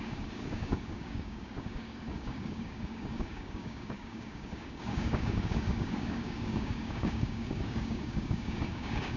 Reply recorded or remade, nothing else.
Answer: remade